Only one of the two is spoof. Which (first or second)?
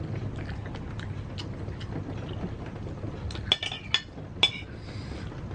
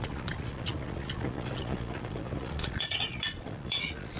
second